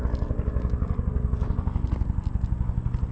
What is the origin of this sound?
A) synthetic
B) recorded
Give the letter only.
B